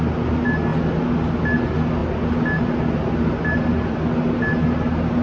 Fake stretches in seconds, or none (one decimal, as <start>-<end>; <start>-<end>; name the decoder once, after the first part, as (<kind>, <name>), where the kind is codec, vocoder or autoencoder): none